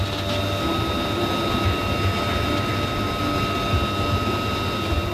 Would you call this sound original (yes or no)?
yes